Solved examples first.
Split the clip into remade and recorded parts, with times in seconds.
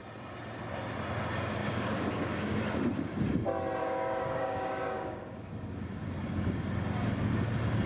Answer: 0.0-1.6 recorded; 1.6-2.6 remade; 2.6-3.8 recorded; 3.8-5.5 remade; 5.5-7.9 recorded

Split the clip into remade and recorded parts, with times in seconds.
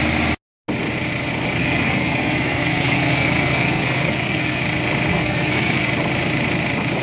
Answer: 0.0-1.6 recorded; 1.6-4.6 remade; 4.6-5.1 recorded; 5.1-5.9 remade; 5.9-7.0 recorded